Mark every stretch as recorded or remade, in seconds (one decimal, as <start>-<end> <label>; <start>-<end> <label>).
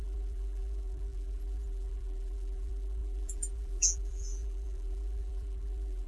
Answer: 0.0-6.1 remade